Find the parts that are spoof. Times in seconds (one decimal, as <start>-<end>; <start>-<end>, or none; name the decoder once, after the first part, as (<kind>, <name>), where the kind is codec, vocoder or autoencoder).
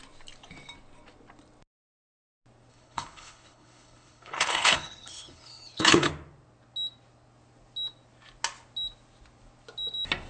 2.7-6.1 (codec, HILCodec)